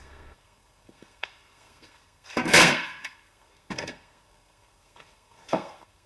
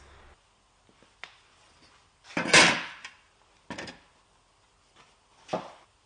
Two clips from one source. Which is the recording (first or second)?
second